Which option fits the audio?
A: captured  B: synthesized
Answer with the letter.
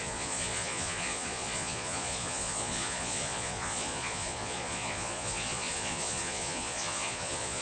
B